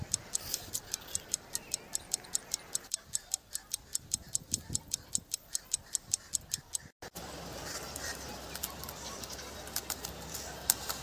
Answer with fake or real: real